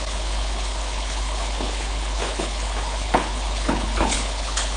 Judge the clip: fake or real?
fake